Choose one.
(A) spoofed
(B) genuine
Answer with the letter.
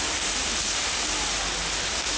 B